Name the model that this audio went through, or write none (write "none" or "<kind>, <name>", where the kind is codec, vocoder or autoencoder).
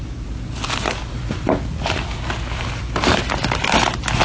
none